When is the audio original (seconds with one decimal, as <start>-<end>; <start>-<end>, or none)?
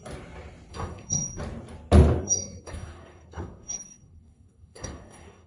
0.0-0.7; 1.4-2.2